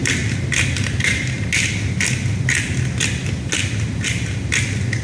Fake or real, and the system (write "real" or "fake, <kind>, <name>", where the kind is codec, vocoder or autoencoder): real